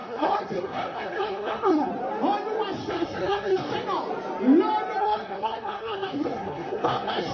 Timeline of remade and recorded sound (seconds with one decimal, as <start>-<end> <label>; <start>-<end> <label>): 0.0-1.9 remade; 1.9-2.9 recorded; 2.9-3.7 remade; 3.7-5.0 recorded; 5.0-7.3 remade